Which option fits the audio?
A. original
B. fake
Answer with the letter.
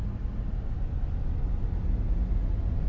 A